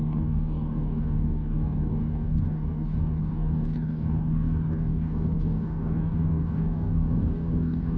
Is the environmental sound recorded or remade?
remade